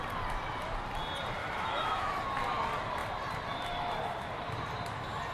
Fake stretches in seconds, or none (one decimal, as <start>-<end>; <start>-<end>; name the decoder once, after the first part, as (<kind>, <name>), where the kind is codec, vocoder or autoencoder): 1.4-2.2 (autoencoder, DAC-VAE)